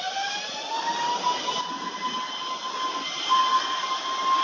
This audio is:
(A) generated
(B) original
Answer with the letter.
B